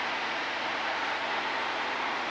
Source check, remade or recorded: remade